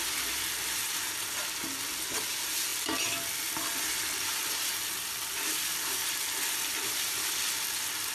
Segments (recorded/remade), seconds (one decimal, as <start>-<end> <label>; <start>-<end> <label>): 0.0-8.1 recorded